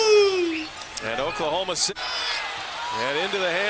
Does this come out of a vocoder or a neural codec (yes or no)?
no